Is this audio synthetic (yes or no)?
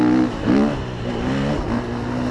no